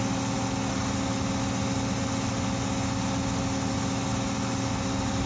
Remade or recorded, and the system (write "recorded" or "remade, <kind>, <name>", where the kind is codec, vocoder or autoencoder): recorded